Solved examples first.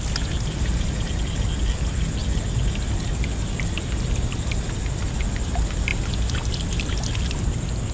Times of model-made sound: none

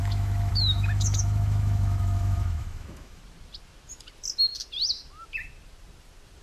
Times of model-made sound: 0.0-3.2 (autoencoder, DAC-VAE)